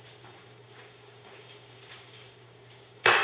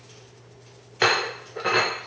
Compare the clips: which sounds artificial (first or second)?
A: first